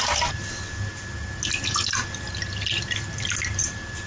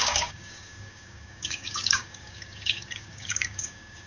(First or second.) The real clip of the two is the first